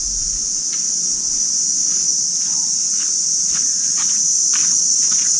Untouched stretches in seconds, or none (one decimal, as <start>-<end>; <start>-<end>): 0.0-4.6